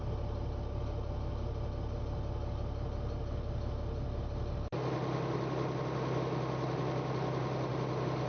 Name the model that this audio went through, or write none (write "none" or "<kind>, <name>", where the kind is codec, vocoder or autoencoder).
none